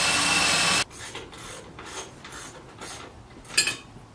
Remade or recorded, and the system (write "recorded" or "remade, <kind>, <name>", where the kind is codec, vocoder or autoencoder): recorded